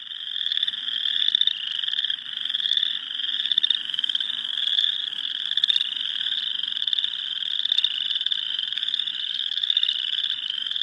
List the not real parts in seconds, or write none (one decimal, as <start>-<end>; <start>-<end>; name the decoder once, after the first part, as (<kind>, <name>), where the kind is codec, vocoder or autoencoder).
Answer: 9.1-9.9 (autoencoder, DAC-VAE)